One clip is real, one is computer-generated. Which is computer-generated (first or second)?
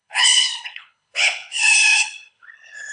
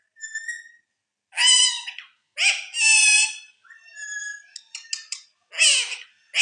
first